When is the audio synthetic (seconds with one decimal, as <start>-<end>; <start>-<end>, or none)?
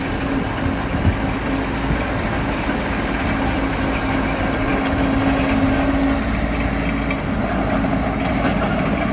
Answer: none